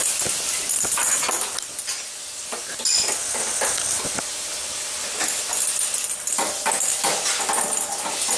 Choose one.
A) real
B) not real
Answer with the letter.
A